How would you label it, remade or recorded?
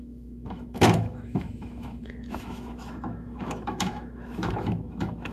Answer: remade